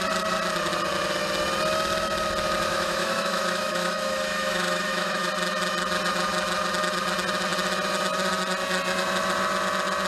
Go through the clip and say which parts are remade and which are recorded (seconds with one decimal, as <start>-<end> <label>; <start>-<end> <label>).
0.0-2.7 recorded; 2.7-5.3 remade; 5.3-10.1 recorded